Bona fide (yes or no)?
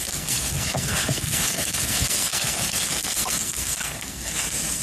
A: no